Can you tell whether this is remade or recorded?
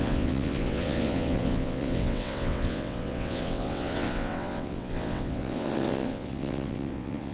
remade